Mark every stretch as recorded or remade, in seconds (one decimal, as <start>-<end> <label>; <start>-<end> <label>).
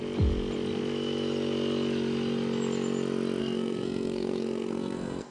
0.0-3.4 recorded; 3.4-5.3 remade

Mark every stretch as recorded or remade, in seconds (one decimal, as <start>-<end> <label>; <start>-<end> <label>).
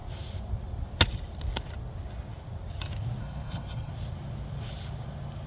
0.0-3.2 recorded; 3.2-3.9 remade; 3.9-5.5 recorded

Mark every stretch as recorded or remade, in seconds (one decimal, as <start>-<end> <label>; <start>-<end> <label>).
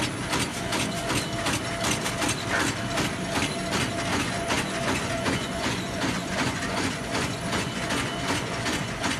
0.0-0.5 recorded; 0.5-1.1 remade; 1.1-4.1 recorded; 4.1-9.2 remade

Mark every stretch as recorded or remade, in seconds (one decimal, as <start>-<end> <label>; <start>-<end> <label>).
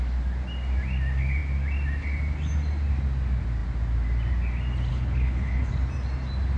0.0-4.9 recorded; 4.9-5.7 remade; 5.7-6.6 recorded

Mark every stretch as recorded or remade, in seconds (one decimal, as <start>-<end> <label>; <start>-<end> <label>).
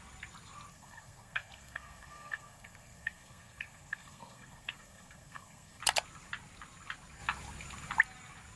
0.0-0.7 recorded; 0.7-5.8 remade; 5.8-8.6 recorded